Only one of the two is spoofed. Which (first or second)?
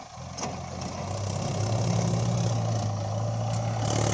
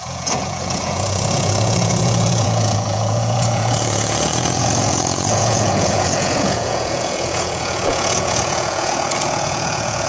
second